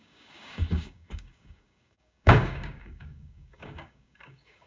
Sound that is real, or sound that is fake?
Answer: fake